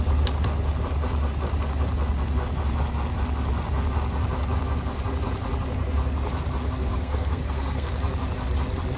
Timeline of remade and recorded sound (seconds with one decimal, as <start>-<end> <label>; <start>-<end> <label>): 0.0-6.9 recorded; 6.9-7.9 remade; 7.9-9.0 recorded